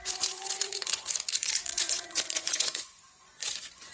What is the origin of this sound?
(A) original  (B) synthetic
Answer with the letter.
B